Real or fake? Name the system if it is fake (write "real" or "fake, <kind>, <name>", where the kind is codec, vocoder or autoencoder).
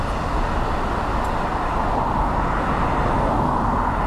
real